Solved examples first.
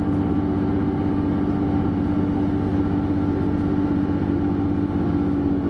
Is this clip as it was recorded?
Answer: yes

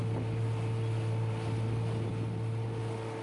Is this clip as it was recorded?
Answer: yes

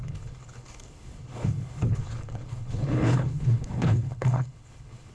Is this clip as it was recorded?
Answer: no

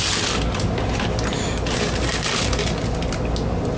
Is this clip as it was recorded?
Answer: yes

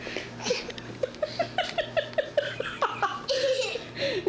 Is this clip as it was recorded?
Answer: yes